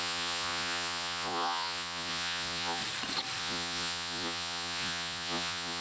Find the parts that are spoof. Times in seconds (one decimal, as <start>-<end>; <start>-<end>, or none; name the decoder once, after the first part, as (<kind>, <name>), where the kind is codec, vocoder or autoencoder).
0.0-2.8 (vocoder, Vocos); 3.4-5.8